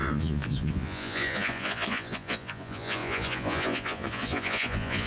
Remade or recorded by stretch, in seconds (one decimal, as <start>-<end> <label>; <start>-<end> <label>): 0.0-5.1 remade

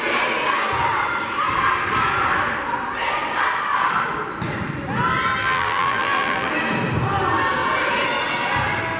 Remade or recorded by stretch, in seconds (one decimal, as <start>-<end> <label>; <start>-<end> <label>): 0.0-5.4 recorded; 5.4-6.5 remade; 6.5-9.0 recorded

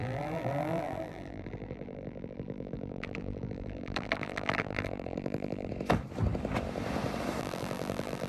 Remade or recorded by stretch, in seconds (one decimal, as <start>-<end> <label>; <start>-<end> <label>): 0.0-5.7 remade; 5.7-7.4 recorded; 7.4-8.3 remade

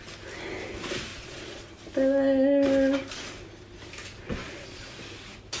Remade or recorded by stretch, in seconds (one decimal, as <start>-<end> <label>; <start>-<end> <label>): 0.0-1.1 recorded; 1.1-1.7 remade; 1.7-4.4 recorded; 4.4-4.9 remade; 4.9-5.6 recorded

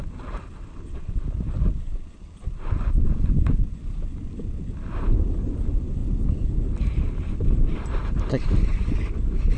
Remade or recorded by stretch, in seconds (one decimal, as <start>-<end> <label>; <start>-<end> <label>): 0.0-8.0 recorded; 8.0-8.9 remade; 8.9-9.6 recorded

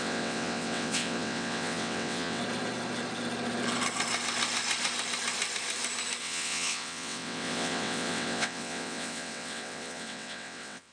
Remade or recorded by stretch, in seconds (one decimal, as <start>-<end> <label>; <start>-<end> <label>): 0.0-2.4 remade; 2.4-6.2 recorded; 6.2-10.9 remade